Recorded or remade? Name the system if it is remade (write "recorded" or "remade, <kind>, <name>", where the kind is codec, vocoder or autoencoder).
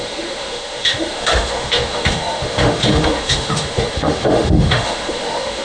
remade, autoencoder, DAC-VAE